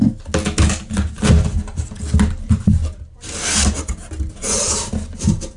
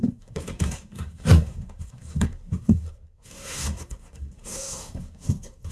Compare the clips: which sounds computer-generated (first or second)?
second